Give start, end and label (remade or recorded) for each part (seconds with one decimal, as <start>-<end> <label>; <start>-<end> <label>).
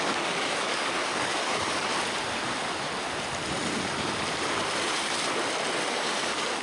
0.0-1.9 remade; 1.9-5.9 recorded; 5.9-6.6 remade